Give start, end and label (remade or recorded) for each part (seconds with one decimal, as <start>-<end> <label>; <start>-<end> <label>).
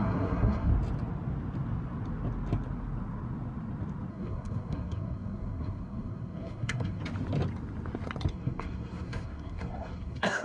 0.0-0.7 remade; 0.7-4.1 recorded; 4.1-7.0 remade; 7.0-8.3 recorded; 8.3-10.4 remade